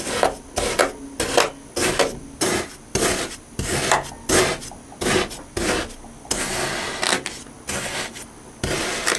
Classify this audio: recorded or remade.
recorded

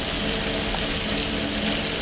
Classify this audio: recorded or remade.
recorded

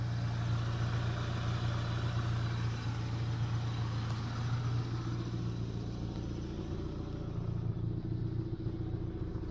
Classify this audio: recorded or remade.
recorded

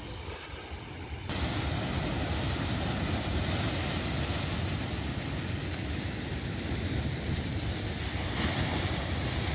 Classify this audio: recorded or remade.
recorded